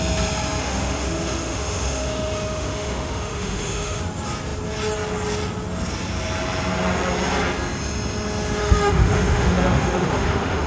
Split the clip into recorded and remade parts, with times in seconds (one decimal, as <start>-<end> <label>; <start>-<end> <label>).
0.0-0.6 recorded; 0.6-4.0 remade; 4.0-8.6 recorded; 8.6-10.7 remade